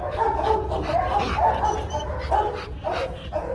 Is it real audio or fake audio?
real